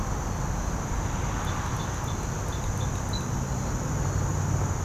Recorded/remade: recorded